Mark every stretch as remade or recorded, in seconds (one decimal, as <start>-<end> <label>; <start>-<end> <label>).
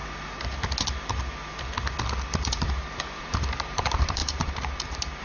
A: 0.0-2.5 recorded; 2.5-5.2 remade